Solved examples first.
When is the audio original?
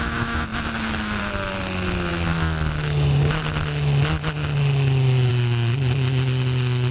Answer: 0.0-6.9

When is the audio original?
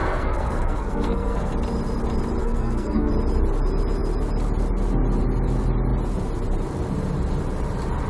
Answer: 1.5-2.4; 3.1-8.1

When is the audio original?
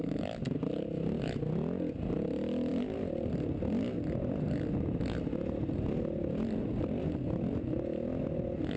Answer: 0.0-8.8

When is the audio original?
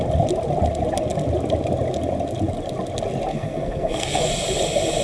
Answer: 0.0-3.3; 4.3-5.0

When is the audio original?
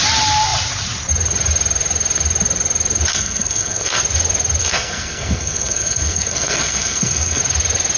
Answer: 0.0-3.1; 4.0-4.6; 7.4-8.0